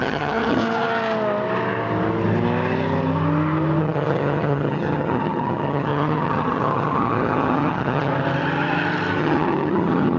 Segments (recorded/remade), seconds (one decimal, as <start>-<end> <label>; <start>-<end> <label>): 0.0-0.6 remade; 0.6-3.8 recorded; 3.8-8.1 remade; 8.1-9.2 recorded; 9.2-10.2 remade